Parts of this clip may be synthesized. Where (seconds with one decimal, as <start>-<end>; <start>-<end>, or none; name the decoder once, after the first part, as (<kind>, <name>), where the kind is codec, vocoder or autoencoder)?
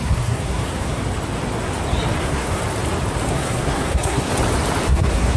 0.0-1.0 (codec, SNAC); 2.2-2.6; 3.3-4.3; 4.9-5.4